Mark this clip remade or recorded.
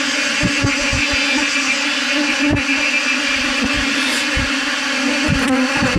recorded